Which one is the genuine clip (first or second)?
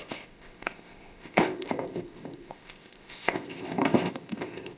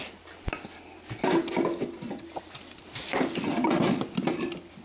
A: second